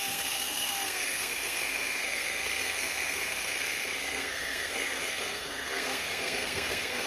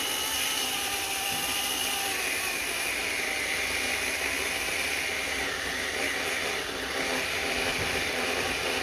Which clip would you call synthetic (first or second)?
first